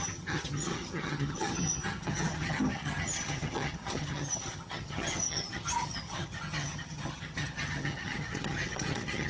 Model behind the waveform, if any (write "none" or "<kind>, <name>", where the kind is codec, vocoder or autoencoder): vocoder, HiFi-GAN